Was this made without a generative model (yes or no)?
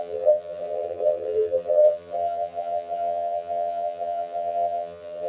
no